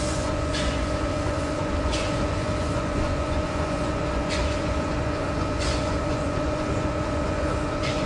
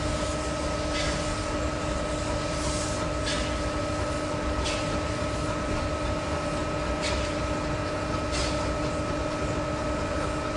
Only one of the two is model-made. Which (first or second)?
first